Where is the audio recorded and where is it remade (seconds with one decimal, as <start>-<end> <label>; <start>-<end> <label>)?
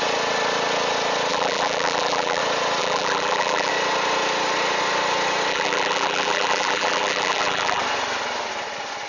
0.0-1.3 recorded; 1.3-2.4 remade; 2.4-2.8 recorded; 2.8-3.7 remade; 3.7-5.5 recorded; 5.5-7.8 remade; 7.8-9.1 recorded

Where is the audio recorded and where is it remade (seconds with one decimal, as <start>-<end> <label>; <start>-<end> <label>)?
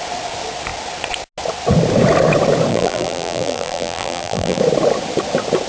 0.0-2.7 recorded; 2.7-4.6 remade; 4.6-5.7 recorded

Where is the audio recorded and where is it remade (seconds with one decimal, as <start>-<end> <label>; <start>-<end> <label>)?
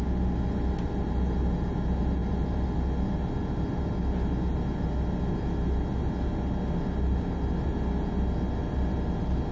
0.0-9.5 recorded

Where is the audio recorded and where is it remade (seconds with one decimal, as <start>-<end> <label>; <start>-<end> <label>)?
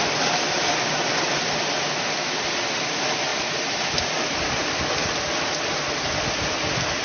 0.0-7.0 recorded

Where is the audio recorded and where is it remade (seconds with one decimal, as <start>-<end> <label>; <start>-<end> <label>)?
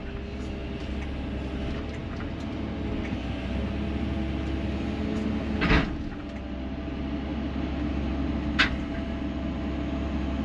0.0-10.4 recorded